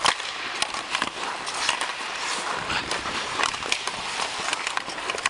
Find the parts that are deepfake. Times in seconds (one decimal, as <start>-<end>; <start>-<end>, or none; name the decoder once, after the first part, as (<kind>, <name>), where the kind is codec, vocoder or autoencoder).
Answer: 1.9-4.5 (vocoder, BigVGAN v2)